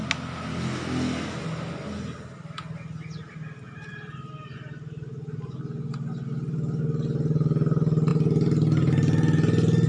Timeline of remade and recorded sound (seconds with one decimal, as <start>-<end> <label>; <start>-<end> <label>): 0.0-9.9 recorded